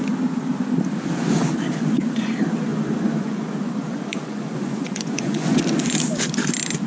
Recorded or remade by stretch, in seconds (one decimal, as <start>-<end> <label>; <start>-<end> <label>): 0.0-2.7 recorded; 2.7-3.6 remade; 3.6-4.1 recorded; 4.1-5.6 remade; 5.6-6.9 recorded